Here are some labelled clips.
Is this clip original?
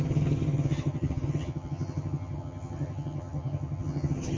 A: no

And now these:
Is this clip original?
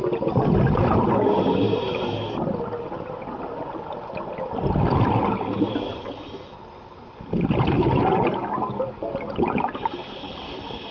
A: yes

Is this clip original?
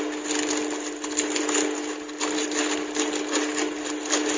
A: yes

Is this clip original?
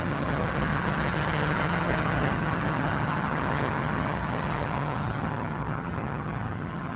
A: no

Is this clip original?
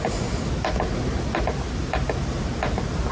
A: yes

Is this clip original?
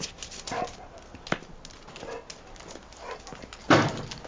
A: yes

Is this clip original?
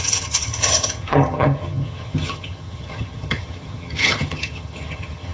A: no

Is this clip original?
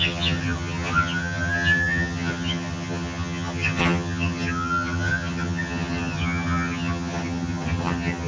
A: no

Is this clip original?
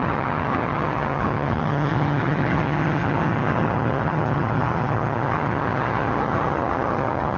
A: no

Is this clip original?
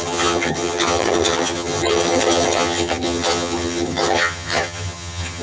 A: no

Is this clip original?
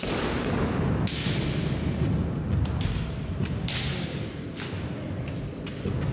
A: yes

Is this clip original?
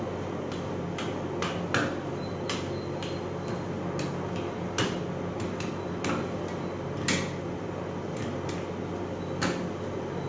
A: yes